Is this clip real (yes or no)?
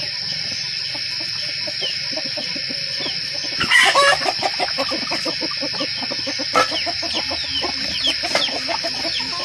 no